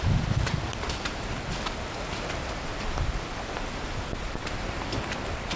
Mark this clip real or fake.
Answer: fake